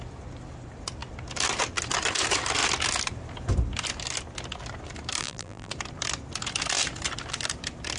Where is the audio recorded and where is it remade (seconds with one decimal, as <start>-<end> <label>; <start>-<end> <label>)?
0.0-5.2 recorded; 5.2-5.7 remade; 5.7-8.0 recorded